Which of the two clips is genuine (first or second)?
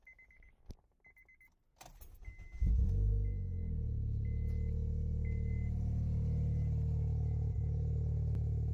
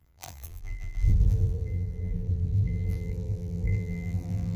first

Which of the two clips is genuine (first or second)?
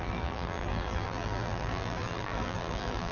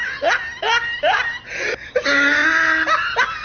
second